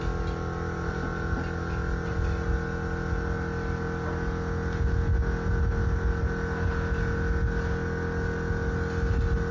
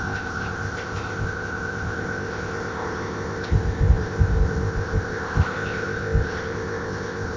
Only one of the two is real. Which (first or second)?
first